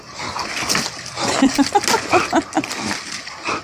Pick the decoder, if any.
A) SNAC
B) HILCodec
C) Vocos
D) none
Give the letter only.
D